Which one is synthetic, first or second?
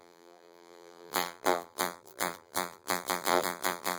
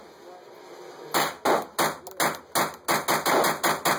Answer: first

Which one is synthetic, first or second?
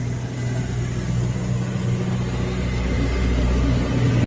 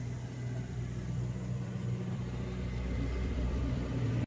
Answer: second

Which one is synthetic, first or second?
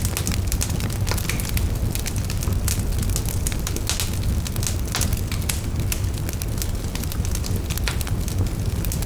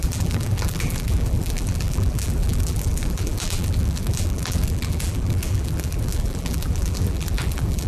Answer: second